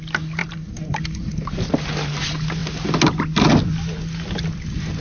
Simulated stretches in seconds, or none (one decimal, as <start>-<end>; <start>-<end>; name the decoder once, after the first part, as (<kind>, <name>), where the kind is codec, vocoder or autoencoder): 0.4-1.4 (vocoder, BigVGAN v2)